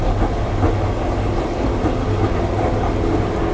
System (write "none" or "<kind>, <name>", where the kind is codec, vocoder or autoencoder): none